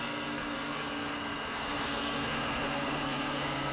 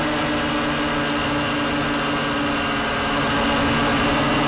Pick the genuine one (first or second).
second